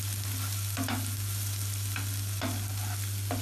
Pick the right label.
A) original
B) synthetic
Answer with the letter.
A